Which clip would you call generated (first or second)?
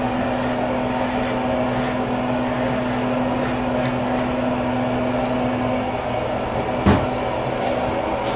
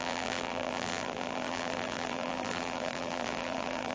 second